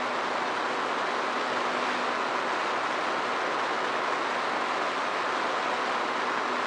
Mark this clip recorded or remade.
recorded